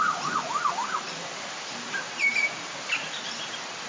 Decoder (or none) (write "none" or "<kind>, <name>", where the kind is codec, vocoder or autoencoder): vocoder, BigVGAN v2